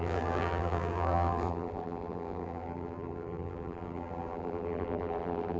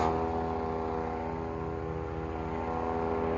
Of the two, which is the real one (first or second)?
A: second